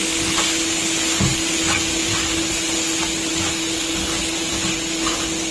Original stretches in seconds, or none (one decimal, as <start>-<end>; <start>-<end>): 0.0-5.5